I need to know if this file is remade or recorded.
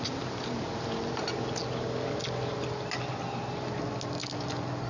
recorded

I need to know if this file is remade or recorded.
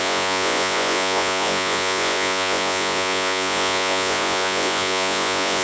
remade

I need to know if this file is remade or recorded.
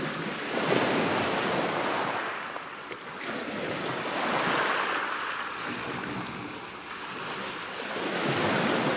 recorded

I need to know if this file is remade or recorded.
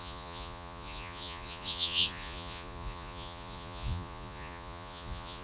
remade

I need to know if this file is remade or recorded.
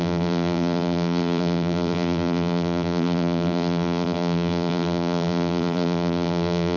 remade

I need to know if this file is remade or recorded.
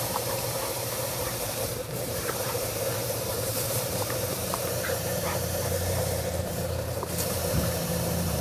remade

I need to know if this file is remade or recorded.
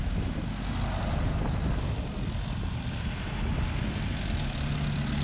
recorded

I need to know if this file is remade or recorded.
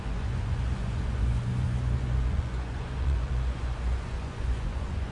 remade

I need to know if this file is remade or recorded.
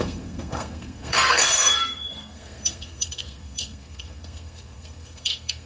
remade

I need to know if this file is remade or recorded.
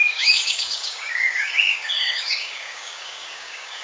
remade